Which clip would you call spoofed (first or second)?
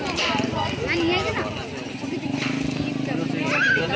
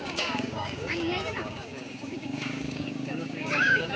second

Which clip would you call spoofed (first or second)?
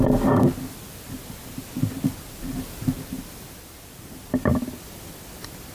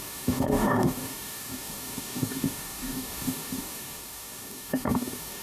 second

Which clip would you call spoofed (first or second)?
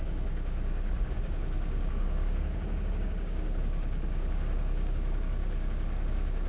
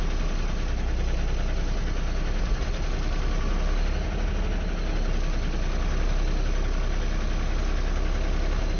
first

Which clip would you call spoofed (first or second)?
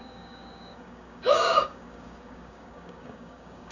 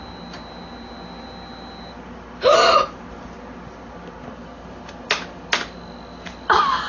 first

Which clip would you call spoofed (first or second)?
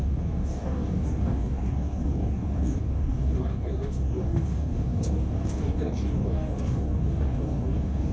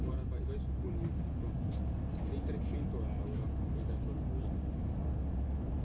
first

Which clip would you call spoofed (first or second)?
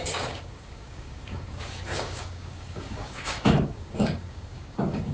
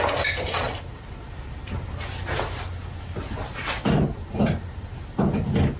first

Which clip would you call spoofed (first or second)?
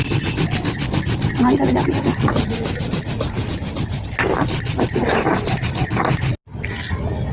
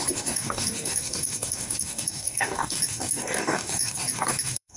second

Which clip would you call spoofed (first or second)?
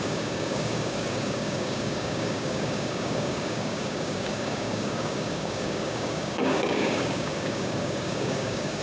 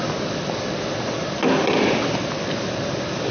first